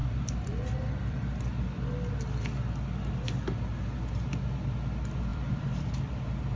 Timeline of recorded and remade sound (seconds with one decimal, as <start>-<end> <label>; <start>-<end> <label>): 0.0-1.4 remade; 1.4-5.3 recorded; 5.3-6.1 remade; 6.1-6.6 recorded